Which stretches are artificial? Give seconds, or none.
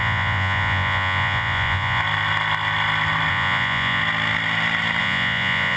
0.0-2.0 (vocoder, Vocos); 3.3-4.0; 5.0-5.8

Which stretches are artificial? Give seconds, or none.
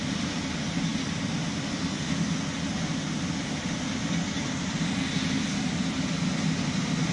none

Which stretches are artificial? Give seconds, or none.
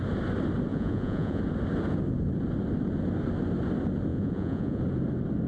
0.7-1.4 (vocoder, Vocos); 4.1-4.8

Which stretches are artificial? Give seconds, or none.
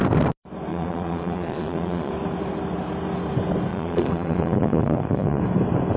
0.7-2.1 (vocoder, Vocos); 3.7-5.4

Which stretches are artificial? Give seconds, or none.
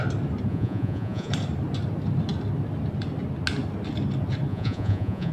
0.5-1.3 (vocoder, Vocos); 4.5-5.3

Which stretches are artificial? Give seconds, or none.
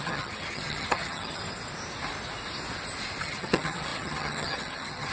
0.0-1.4 (vocoder, HiFi-GAN); 3.2-5.1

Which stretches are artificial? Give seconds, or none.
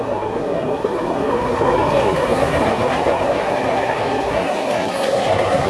0.0-5.7 (codec, SNAC)